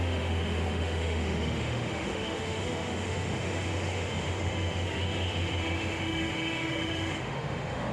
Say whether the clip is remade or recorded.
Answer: remade